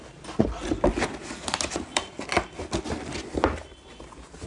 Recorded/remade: recorded